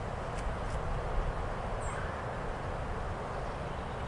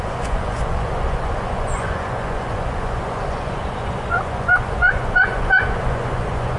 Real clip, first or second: first